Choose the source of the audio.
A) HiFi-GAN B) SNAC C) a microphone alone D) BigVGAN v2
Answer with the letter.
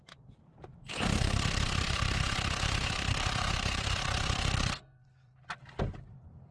D